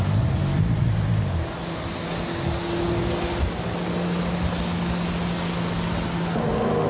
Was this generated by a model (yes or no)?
no